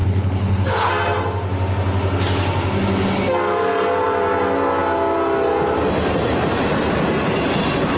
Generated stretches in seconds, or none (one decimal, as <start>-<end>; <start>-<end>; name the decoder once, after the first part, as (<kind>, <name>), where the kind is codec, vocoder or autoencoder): 0.0-0.9 (codec, HILCodec)